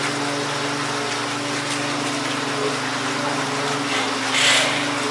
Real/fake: real